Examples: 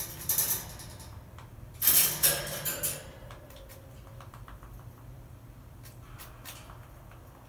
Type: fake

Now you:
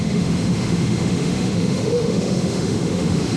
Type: fake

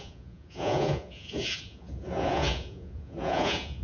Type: fake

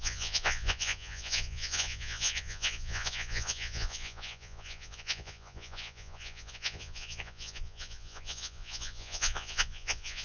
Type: fake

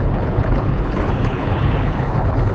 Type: fake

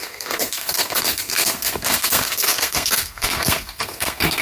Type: fake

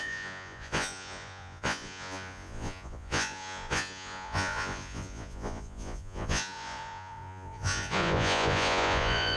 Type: fake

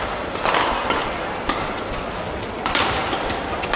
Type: fake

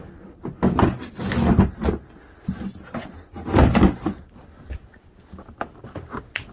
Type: real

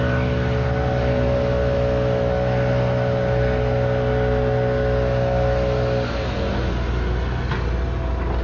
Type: real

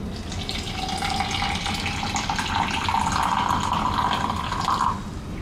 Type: real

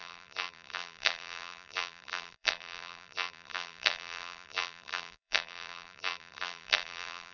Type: fake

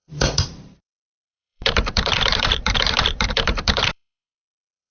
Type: fake